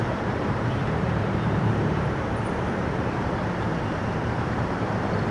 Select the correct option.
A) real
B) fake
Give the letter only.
B